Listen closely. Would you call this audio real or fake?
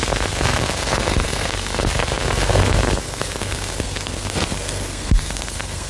fake